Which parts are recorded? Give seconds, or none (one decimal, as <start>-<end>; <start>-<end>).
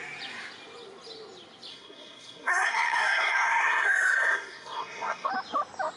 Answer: 0.0-1.7; 5.3-6.0